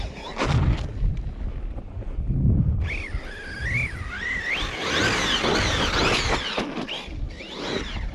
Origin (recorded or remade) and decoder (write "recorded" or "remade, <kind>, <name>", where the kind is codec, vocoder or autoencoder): recorded